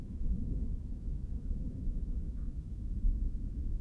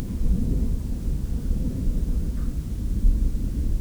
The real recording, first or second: second